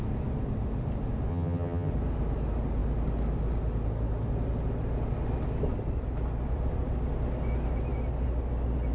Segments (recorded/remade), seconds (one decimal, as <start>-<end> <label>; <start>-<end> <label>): 0.0-1.3 recorded; 1.3-1.9 remade; 1.9-8.9 recorded